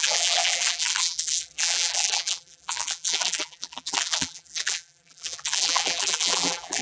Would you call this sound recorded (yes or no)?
no